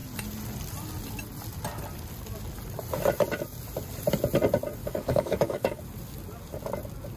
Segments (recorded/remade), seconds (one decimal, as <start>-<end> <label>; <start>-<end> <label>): 0.0-4.8 recorded; 4.8-5.8 remade; 5.8-7.2 recorded